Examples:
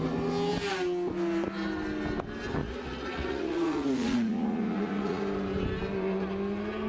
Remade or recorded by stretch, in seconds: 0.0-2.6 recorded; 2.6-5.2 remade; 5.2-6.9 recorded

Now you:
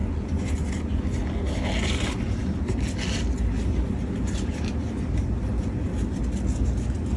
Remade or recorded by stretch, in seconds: 0.0-1.0 remade; 1.0-7.2 recorded

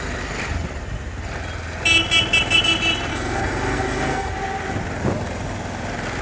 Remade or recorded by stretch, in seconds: 0.0-3.1 recorded; 3.1-4.3 remade; 4.3-6.2 recorded